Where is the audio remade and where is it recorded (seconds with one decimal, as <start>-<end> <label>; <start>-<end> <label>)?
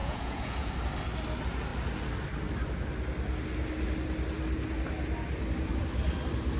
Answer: 0.0-0.7 remade; 0.7-6.6 recorded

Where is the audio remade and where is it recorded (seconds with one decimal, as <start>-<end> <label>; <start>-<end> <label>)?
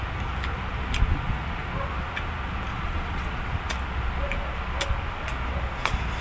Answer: 0.0-2.7 recorded; 2.7-3.4 remade; 3.4-6.2 recorded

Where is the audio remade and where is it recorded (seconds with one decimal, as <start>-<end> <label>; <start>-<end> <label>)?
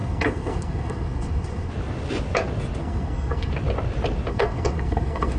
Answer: 0.0-1.7 remade; 1.7-2.8 recorded; 2.8-3.5 remade; 3.5-4.3 recorded; 4.3-5.4 remade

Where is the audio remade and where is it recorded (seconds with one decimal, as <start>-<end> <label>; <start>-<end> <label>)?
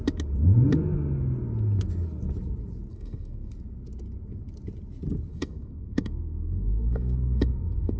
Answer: 0.0-2.9 recorded; 2.9-3.5 remade; 3.5-5.3 recorded; 5.3-8.0 remade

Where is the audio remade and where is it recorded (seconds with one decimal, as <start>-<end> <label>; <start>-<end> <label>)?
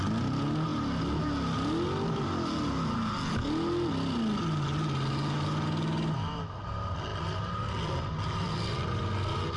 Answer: 0.0-9.6 recorded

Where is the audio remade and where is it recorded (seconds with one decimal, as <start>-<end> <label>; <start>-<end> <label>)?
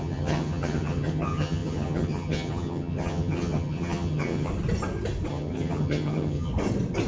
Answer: 0.0-4.5 remade; 4.5-5.3 recorded; 5.3-6.5 remade; 6.5-7.1 recorded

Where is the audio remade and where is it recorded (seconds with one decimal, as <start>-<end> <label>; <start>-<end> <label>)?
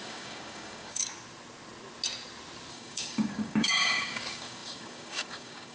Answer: 0.0-1.0 remade; 1.0-2.7 recorded; 2.7-5.7 remade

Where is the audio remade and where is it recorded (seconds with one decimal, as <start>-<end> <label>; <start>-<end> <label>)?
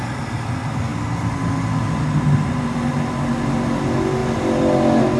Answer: 0.0-5.2 recorded